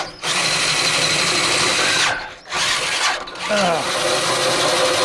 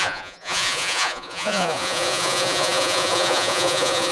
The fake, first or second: second